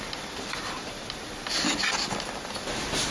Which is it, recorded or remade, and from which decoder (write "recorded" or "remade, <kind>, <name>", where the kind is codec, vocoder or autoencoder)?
recorded